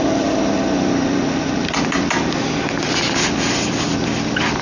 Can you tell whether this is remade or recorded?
recorded